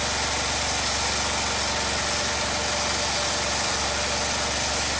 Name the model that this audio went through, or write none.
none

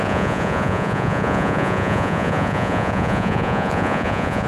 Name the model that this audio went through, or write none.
vocoder, Vocos